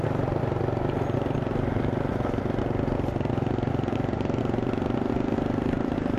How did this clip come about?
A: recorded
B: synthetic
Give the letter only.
A